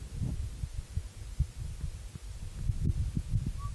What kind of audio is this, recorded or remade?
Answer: recorded